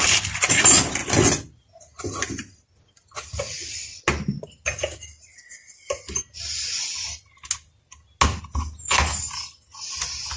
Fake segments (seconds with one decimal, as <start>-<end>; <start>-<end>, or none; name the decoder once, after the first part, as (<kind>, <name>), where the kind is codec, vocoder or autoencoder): 1.0-1.5 (vocoder, Vocos)